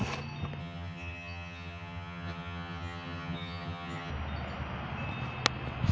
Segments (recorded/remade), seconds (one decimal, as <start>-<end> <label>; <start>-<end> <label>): 0.0-0.6 recorded; 0.6-4.1 remade; 4.1-5.9 recorded